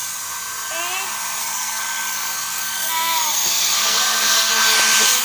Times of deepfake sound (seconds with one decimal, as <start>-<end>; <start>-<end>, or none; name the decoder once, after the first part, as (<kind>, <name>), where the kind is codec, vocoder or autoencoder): 1.4-4.5 (codec, SNAC)